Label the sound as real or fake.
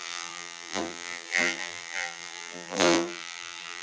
fake